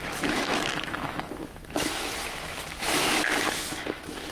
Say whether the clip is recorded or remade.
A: remade